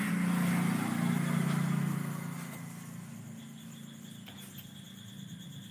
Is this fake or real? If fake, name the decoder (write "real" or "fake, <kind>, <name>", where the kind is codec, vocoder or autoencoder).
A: real